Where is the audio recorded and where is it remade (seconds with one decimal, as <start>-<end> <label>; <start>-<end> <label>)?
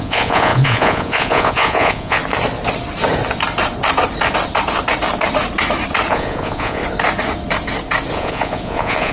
0.0-2.2 remade; 2.2-6.1 recorded; 6.1-6.8 remade; 6.8-8.1 recorded; 8.1-9.1 remade